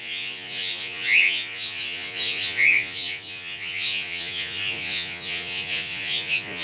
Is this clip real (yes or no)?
no